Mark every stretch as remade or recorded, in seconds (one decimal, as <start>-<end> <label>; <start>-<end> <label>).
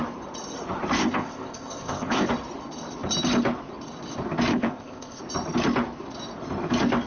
0.0-1.0 recorded; 1.0-2.3 remade; 2.3-4.5 recorded; 4.5-5.2 remade; 5.2-7.1 recorded